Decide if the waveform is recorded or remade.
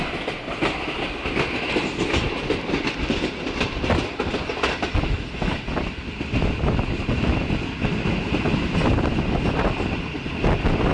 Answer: recorded